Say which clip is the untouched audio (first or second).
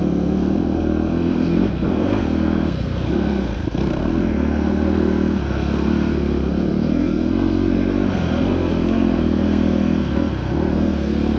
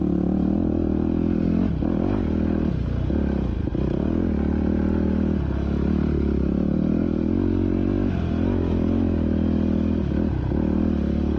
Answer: second